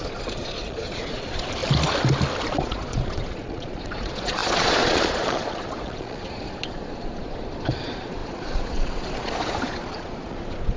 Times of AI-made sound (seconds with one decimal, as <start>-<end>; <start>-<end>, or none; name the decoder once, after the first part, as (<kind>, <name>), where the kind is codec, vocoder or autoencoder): 0.0-1.6 (vocoder, Vocos); 2.6-10.8